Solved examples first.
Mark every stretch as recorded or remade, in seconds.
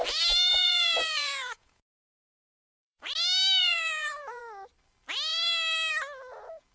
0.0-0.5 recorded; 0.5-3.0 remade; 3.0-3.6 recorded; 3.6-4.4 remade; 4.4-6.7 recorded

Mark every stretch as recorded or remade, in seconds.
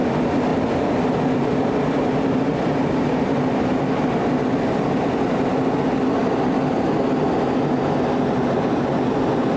0.0-0.5 recorded; 0.5-3.1 remade; 3.1-9.6 recorded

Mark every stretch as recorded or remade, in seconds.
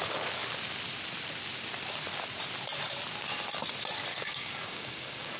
0.0-4.1 recorded; 4.1-5.4 remade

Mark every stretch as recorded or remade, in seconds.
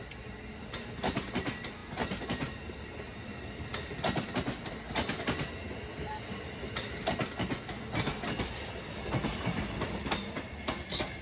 0.0-11.2 recorded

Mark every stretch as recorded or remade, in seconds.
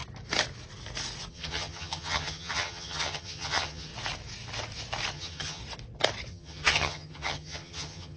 0.0-1.3 recorded; 1.3-3.9 remade; 3.9-5.1 recorded; 5.1-5.6 remade; 5.6-6.3 recorded; 6.3-8.2 remade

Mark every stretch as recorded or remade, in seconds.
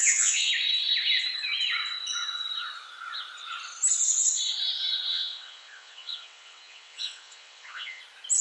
0.0-0.5 remade; 0.5-5.1 recorded; 5.1-8.0 remade; 8.0-8.4 recorded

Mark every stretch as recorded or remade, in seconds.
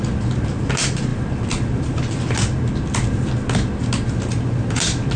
0.0-5.2 recorded